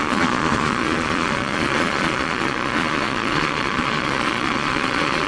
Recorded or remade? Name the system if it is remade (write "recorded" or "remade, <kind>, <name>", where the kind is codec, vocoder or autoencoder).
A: remade, vocoder, Vocos